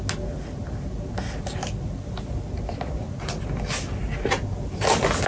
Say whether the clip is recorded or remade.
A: recorded